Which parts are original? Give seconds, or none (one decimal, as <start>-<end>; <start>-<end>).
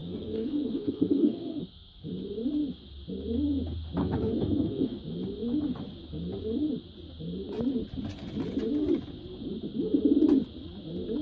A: 2.1-4.0; 5.0-11.2